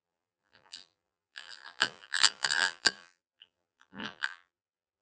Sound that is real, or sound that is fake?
fake